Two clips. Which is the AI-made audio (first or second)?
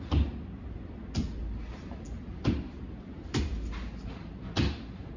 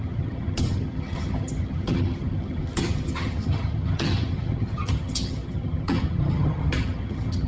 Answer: second